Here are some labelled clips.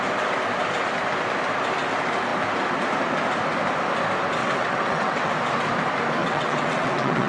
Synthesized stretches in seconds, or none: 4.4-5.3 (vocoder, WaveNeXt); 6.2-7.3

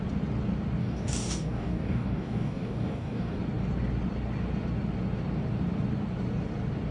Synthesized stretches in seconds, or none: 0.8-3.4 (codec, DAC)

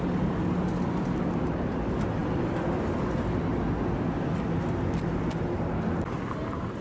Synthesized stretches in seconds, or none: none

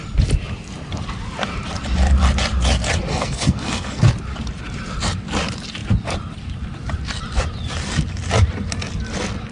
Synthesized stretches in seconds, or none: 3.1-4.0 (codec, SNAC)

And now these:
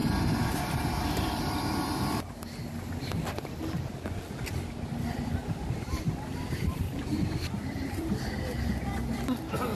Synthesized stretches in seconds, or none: 0.0-1.3 (vocoder, BigVGAN v2); 5.4-6.0; 7.1-8.1